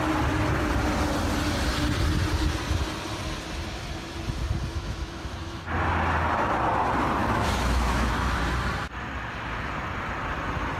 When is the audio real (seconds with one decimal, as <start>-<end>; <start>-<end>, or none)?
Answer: 0.0-4.7; 5.6-7.2; 8.4-10.8